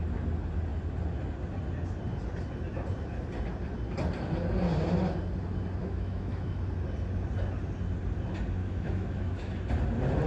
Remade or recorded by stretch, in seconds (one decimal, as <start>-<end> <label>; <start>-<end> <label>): 0.0-5.8 recorded; 5.8-6.6 remade; 6.6-8.6 recorded; 8.6-9.5 remade; 9.5-10.3 recorded